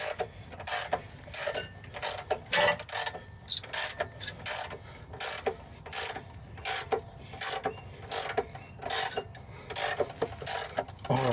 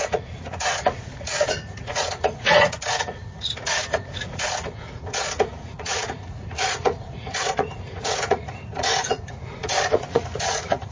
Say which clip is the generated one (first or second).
second